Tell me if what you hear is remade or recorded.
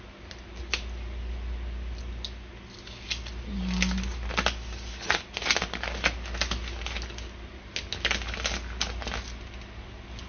recorded